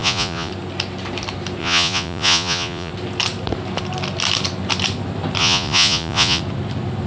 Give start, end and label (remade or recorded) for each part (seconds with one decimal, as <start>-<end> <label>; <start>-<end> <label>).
0.0-0.5 remade; 0.5-1.6 recorded; 1.6-2.9 remade; 2.9-5.4 recorded; 5.4-6.4 remade; 6.4-7.1 recorded

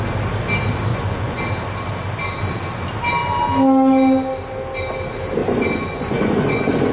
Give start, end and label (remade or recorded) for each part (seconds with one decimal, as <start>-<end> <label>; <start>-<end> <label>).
0.0-0.9 recorded; 0.9-1.4 remade; 1.4-5.4 recorded; 5.4-6.9 remade

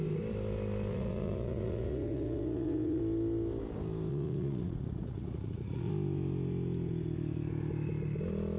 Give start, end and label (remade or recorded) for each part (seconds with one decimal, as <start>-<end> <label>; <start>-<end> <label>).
0.0-0.9 recorded; 0.9-3.0 remade; 3.0-4.1 recorded; 4.1-5.9 remade; 5.9-8.6 recorded

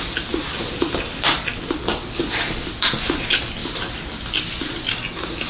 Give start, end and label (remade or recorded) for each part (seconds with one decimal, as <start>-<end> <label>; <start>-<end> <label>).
0.0-5.5 recorded

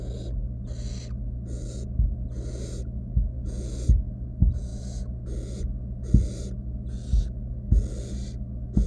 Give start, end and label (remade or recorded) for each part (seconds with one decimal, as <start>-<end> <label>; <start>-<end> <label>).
0.0-8.9 recorded

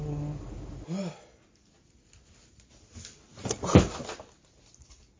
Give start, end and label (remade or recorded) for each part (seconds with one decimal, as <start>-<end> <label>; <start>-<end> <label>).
0.0-5.2 recorded

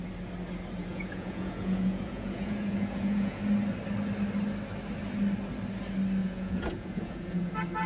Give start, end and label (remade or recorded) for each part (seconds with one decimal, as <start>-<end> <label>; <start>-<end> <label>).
0.0-0.8 recorded; 0.8-3.4 remade; 3.4-6.2 recorded; 6.2-7.5 remade; 7.5-7.9 recorded

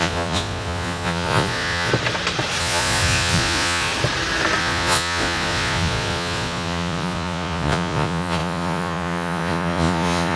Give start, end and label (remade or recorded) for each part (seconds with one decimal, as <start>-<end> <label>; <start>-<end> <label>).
0.0-1.9 remade; 1.9-2.6 recorded; 2.6-3.9 remade; 3.9-4.6 recorded; 4.6-10.4 remade